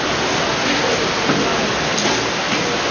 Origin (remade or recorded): recorded